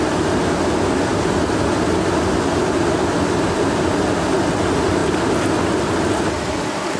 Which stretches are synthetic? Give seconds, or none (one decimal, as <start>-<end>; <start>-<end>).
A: none